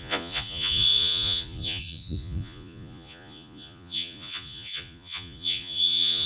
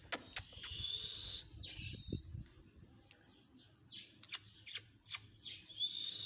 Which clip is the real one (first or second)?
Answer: second